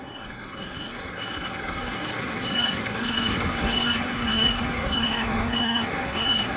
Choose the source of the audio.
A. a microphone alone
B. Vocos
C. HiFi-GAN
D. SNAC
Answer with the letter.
D